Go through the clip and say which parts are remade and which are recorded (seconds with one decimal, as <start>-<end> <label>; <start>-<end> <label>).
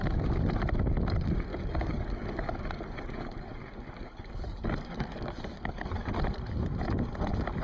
0.0-1.5 recorded; 1.5-6.1 remade; 6.1-7.6 recorded